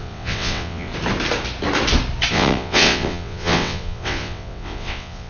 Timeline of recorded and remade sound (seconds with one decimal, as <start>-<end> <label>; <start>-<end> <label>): 0.0-0.9 remade; 0.9-2.3 recorded; 2.3-5.3 remade